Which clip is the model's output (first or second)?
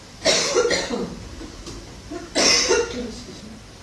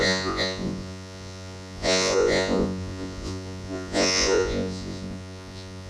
second